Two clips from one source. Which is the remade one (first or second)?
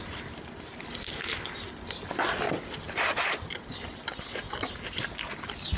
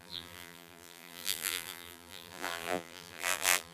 second